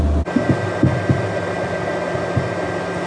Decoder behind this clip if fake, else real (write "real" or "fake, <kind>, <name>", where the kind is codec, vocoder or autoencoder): real